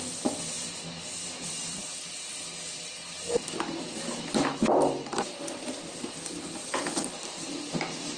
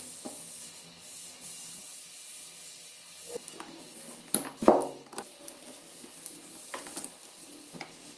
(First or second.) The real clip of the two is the second